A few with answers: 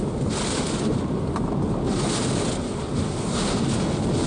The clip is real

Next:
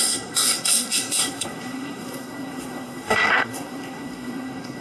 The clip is fake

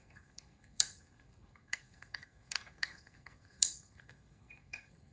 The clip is fake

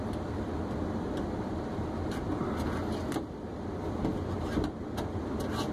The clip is real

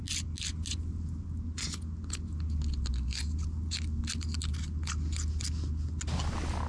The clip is real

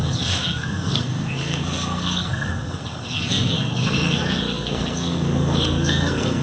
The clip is fake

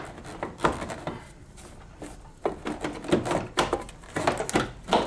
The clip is real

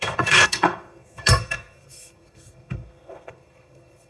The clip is fake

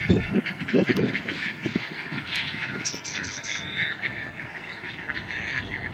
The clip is fake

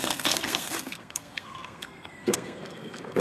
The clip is fake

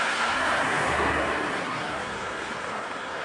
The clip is fake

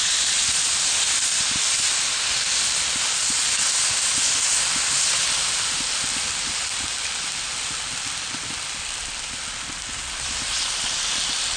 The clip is real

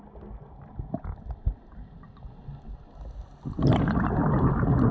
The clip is real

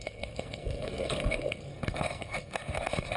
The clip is fake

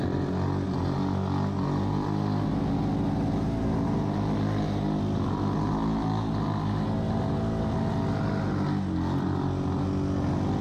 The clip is real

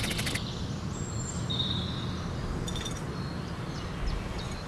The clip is real